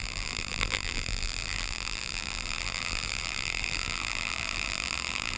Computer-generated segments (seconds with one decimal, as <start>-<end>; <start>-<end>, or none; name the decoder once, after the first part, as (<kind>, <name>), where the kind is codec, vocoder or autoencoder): 0.0-5.4 (vocoder, BigVGAN v2)